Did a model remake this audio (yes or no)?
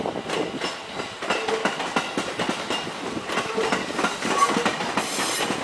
no